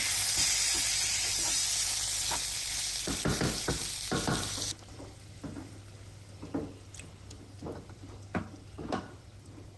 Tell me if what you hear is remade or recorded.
recorded